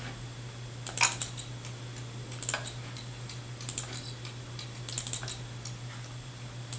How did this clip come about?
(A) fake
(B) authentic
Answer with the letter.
B